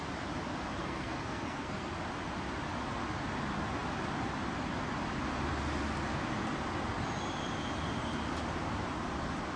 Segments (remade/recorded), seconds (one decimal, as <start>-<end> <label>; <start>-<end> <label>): 0.0-0.8 recorded; 0.8-1.9 remade; 1.9-9.6 recorded